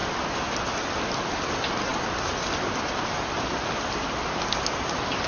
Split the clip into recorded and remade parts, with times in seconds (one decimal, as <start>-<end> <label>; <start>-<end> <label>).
0.0-5.3 recorded